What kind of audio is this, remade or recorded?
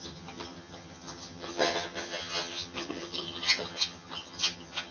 remade